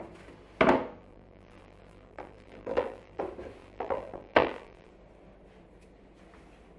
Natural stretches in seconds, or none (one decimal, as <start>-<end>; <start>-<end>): 0.0-1.0; 3.2-3.6; 4.9-6.8